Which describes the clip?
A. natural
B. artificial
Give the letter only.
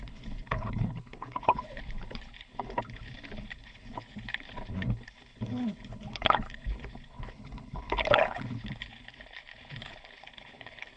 B